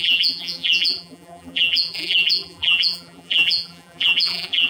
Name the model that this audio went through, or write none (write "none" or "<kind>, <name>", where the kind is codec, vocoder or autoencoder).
vocoder, BigVGAN v2